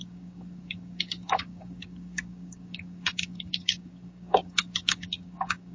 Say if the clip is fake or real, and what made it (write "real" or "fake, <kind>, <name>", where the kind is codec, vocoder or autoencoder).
fake, codec, DAC